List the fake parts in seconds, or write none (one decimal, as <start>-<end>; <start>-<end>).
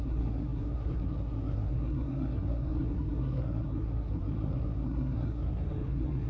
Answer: 0.0-6.3